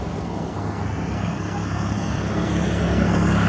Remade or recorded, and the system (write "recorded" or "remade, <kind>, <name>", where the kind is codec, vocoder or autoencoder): remade, codec, SNAC